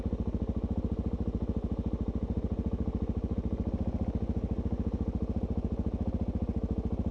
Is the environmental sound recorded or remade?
recorded